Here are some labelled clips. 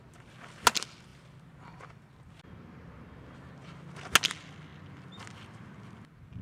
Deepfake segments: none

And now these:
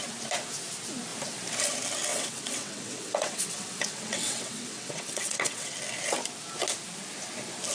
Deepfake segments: 2.1-5.7 (vocoder, WaveNeXt)

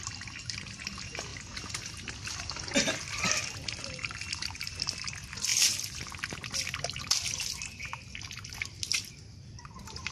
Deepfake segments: none